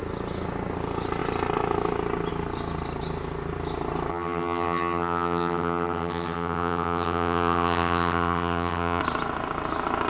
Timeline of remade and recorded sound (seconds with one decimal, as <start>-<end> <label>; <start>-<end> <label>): 0.0-4.1 recorded; 4.1-9.0 remade; 9.0-10.1 recorded